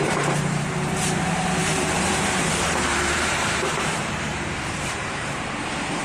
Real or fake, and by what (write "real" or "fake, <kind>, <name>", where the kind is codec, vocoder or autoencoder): fake, vocoder, BigVGAN v2